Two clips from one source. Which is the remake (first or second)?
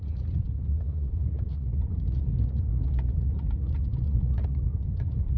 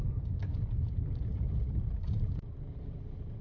first